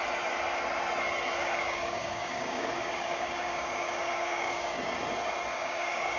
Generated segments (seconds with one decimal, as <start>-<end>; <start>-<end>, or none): 1.4-4.9; 5.5-6.2